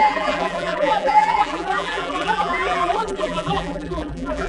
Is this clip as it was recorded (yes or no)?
no